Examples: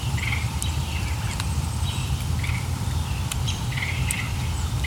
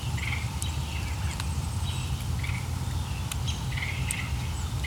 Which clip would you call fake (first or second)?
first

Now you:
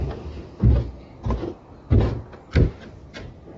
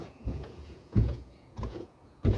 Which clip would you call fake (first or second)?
second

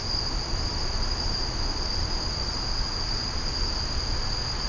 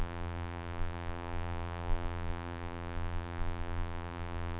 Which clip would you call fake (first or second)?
second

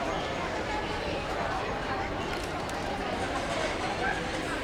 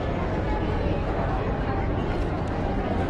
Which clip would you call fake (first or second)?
first